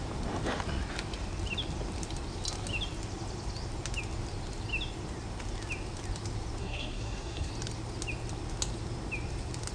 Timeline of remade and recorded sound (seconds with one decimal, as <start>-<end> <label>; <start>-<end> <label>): 0.0-6.6 recorded; 6.6-7.5 remade; 7.5-9.7 recorded